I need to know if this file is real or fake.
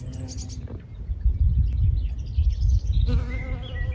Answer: real